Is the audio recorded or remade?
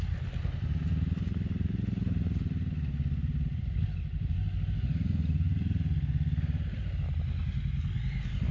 recorded